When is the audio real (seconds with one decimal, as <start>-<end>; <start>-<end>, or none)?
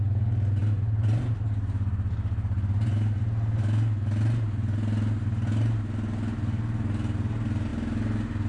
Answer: 0.0-8.5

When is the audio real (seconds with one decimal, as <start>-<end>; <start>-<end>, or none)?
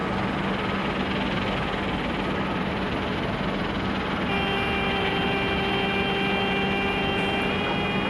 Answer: 0.0-8.1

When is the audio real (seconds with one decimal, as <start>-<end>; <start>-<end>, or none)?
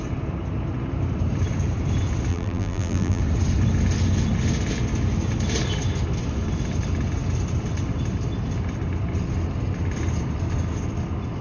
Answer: 0.0-2.3; 3.2-11.4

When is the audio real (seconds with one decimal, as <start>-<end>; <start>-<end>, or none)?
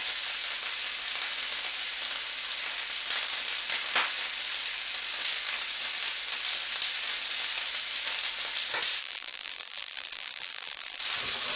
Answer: 0.0-9.0; 11.0-11.6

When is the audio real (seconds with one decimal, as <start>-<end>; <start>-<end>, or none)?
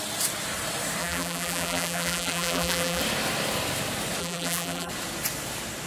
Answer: 0.0-1.0; 3.0-4.2; 4.9-5.9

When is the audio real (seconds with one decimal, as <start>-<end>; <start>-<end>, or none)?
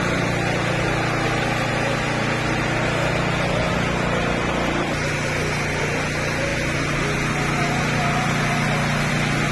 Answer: 0.0-9.5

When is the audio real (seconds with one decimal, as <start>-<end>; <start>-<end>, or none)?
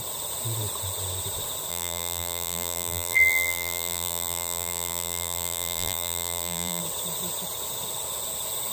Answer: 0.0-1.7; 6.8-8.7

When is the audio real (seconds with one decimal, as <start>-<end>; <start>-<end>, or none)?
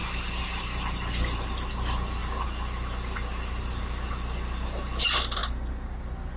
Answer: 0.0-6.4